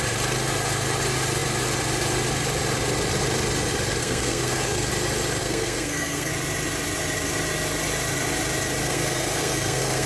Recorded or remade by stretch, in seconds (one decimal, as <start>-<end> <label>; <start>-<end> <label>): 0.0-4.0 recorded; 4.0-4.9 remade; 4.9-5.4 recorded; 5.4-6.3 remade; 6.3-8.8 recorded; 8.8-10.1 remade